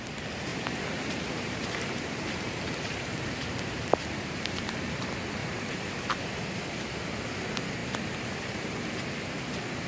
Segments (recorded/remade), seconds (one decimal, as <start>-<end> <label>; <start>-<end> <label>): 0.0-0.5 recorded; 0.5-5.0 remade; 5.0-5.4 recorded; 5.4-6.4 remade; 6.4-9.9 recorded